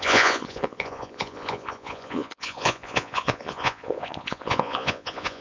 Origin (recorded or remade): remade